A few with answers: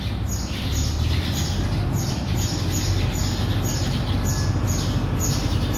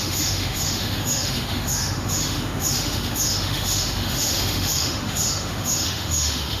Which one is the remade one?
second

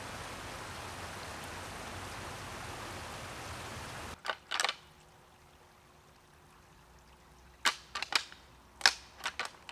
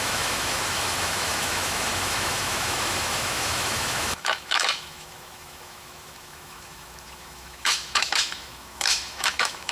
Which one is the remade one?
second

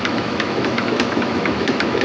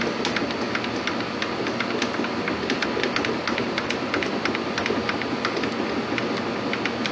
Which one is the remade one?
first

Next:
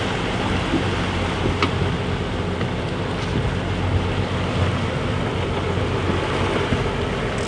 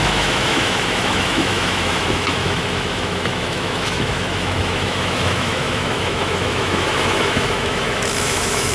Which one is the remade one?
second